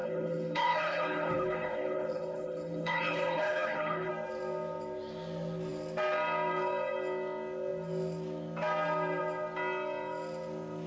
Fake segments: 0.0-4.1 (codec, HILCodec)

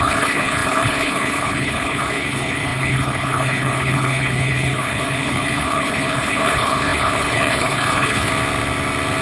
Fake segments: 0.0-8.3 (codec, HILCodec)

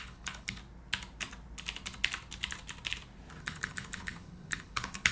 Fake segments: 0.0-0.6 (codec, HILCodec); 3.4-5.1

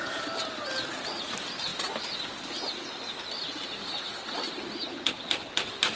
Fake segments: none

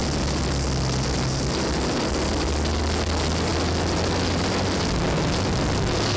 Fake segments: none

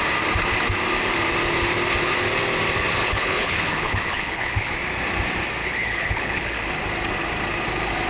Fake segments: 3.0-4.7 (codec, HILCodec); 5.6-6.6